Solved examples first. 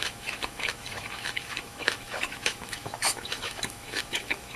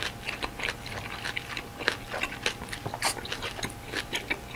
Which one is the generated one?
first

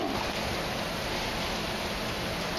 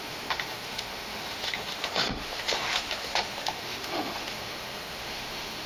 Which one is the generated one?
second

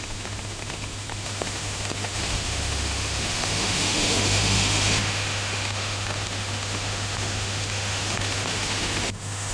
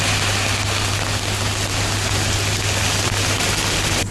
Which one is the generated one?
first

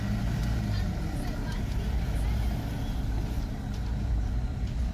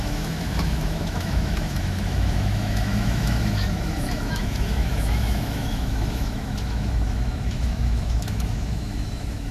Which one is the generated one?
second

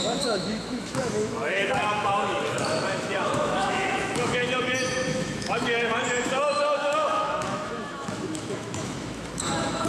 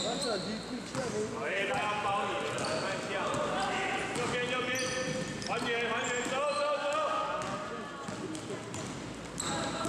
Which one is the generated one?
first